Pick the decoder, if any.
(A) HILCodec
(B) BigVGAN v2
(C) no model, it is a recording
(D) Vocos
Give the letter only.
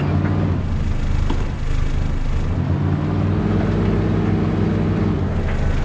C